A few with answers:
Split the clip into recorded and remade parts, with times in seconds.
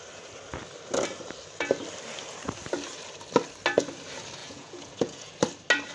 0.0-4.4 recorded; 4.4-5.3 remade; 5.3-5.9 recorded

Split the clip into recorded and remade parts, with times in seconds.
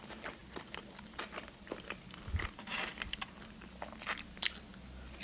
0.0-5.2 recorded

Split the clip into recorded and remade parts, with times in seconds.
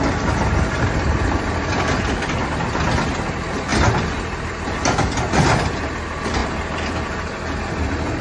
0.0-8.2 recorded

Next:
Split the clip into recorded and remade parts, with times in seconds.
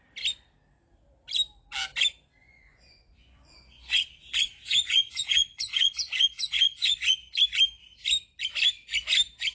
0.0-2.4 recorded; 2.4-7.3 remade; 7.3-9.5 recorded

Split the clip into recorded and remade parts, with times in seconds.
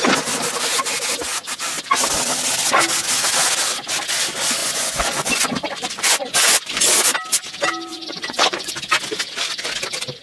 0.0-4.6 recorded; 4.6-6.9 remade; 6.9-7.9 recorded; 7.9-8.7 remade; 8.7-10.2 recorded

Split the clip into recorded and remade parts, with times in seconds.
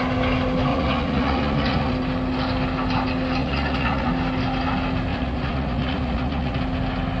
0.0-0.7 recorded; 0.7-1.9 remade; 1.9-3.4 recorded; 3.4-4.1 remade; 4.1-5.1 recorded; 5.1-6.6 remade; 6.6-7.2 recorded